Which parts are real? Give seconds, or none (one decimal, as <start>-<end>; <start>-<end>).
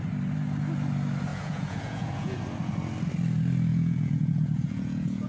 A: 0.0-1.3; 2.4-3.7